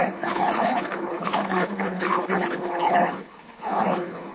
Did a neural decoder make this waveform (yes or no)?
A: yes